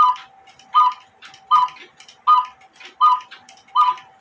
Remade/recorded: recorded